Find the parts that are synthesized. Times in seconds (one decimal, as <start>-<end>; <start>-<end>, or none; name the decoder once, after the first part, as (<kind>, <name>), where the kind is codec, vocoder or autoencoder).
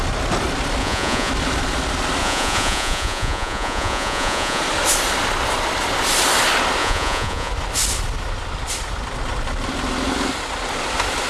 0.8-1.3 (vocoder, Vocos); 2.2-4.6; 6.8-7.5